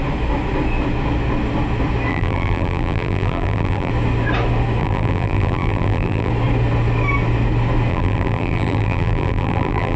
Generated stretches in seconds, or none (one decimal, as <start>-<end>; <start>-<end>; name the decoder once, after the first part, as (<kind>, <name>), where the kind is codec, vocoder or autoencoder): 2.1-3.9 (vocoder, BigVGAN v2); 4.8-6.3; 7.9-10.0